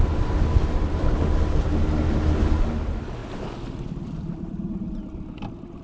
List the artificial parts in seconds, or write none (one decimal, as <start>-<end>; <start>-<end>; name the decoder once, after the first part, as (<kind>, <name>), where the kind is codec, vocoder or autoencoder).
none